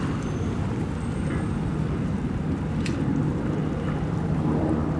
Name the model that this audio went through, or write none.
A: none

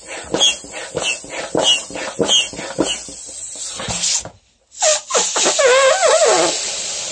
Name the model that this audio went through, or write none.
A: none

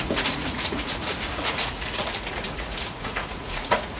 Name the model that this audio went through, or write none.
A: vocoder, Vocos